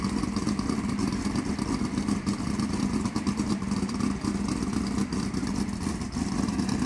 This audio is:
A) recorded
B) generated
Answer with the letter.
A